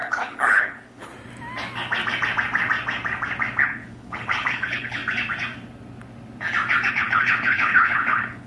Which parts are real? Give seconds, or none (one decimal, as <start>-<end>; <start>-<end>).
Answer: 1.1-3.6; 5.0-6.9